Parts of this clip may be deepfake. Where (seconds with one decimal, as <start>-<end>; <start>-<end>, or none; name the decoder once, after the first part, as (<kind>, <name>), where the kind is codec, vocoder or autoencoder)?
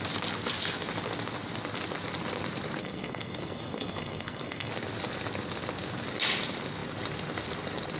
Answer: 2.8-4.7 (codec, SNAC)